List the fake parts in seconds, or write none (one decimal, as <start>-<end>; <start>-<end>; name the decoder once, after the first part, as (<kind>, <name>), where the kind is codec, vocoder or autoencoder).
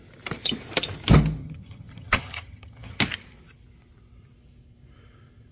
1.4-3.0 (vocoder, HiFi-GAN)